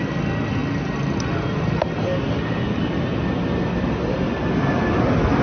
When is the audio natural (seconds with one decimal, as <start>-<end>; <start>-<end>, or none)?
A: 0.0-5.4